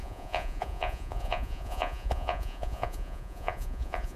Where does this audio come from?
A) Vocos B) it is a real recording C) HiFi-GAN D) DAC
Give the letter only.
A